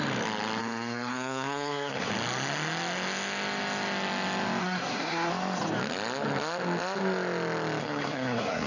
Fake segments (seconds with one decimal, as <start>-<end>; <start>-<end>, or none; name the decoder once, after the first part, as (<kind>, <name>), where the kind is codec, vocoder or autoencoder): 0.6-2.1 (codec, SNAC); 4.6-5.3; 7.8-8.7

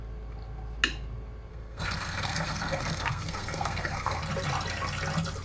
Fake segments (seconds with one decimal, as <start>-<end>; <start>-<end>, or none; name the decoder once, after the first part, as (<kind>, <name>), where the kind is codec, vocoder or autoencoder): 1.5-4.2 (codec, SNAC)

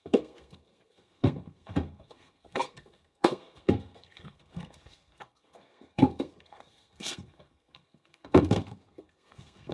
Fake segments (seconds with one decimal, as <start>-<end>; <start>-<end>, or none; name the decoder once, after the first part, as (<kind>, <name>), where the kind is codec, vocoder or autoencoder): 0.0-9.7 (codec, SNAC)

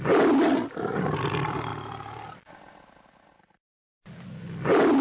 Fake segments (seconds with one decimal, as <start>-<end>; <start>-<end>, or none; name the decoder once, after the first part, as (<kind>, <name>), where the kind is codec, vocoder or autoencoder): none

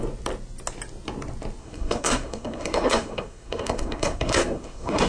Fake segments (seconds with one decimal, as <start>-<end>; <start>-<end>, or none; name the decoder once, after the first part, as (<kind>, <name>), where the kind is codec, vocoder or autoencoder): 1.6-5.1 (codec, SNAC)